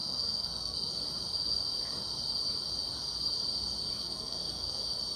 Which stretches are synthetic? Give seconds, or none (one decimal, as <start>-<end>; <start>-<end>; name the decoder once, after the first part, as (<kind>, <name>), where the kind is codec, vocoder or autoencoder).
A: 0.0-0.9 (codec, SNAC); 4.0-4.8